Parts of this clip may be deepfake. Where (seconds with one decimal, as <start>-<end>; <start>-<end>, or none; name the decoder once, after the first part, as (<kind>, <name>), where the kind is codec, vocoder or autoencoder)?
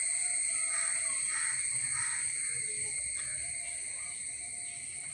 none